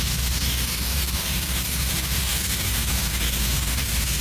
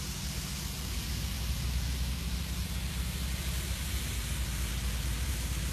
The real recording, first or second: second